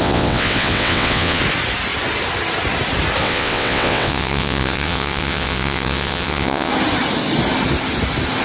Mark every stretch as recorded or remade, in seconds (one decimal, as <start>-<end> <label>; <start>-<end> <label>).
0.0-1.4 remade; 1.4-3.2 recorded; 3.2-6.7 remade; 6.7-8.4 recorded